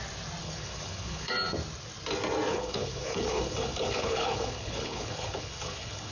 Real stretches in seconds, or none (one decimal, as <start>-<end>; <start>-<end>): 0.0-0.4; 1.3-2.5